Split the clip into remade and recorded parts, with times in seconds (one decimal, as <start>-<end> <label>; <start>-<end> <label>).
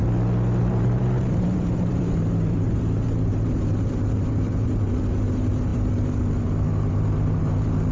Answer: 0.0-0.6 recorded; 0.6-7.9 remade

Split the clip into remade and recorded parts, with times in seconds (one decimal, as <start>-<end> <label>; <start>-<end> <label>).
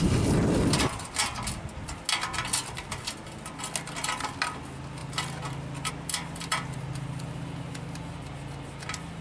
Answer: 0.0-9.2 recorded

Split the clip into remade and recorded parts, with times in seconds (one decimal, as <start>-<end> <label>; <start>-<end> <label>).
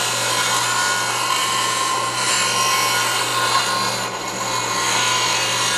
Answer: 0.0-1.4 recorded; 1.4-2.3 remade; 2.3-5.8 recorded